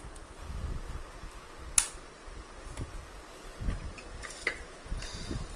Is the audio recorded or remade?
recorded